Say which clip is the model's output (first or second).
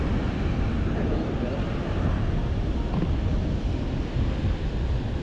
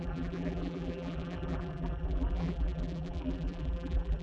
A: second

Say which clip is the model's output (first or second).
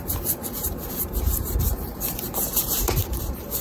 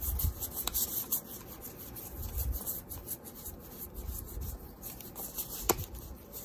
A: first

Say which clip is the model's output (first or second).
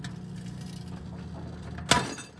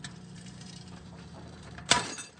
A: second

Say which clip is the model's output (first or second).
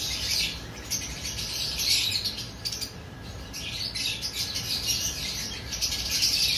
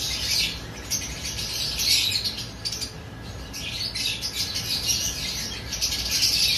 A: first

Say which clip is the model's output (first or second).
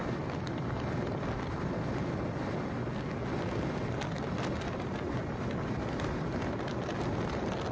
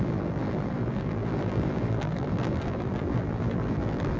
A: second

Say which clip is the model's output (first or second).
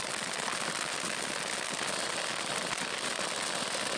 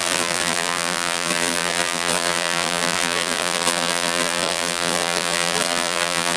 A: second